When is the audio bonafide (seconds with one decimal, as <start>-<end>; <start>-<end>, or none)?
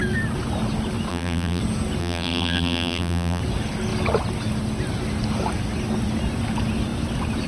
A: 0.0-1.1; 1.6-2.0; 3.4-7.5